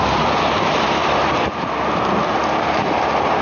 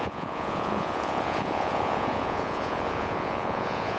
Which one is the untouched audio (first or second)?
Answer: first